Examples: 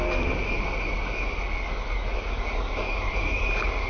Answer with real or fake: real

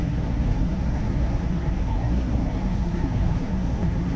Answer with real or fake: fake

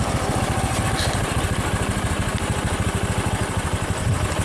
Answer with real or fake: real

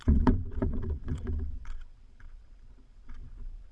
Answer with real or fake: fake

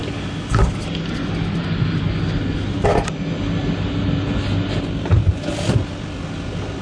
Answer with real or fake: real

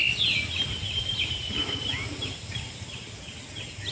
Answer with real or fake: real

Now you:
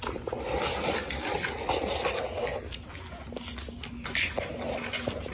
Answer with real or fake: real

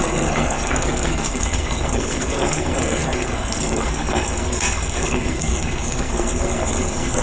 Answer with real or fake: fake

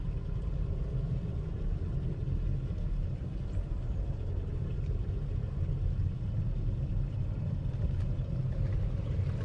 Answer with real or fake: real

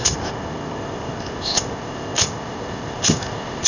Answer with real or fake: fake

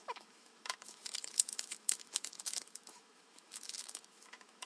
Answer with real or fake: fake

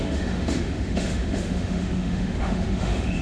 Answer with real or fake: fake